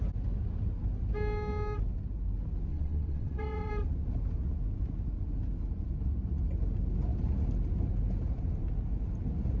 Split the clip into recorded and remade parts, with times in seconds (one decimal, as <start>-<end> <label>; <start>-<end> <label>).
0.0-2.7 recorded; 2.7-3.7 remade; 3.7-9.6 recorded